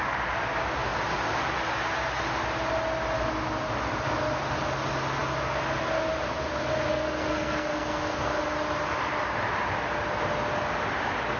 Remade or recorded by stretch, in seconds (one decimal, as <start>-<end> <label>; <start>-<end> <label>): 0.0-6.9 recorded; 6.9-8.4 remade; 8.4-11.4 recorded